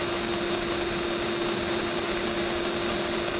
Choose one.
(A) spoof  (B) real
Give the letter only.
B